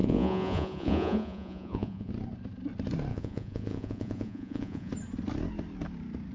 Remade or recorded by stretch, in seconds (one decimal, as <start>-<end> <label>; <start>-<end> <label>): 0.0-2.1 remade; 2.1-3.1 recorded; 3.1-4.9 remade; 4.9-6.3 recorded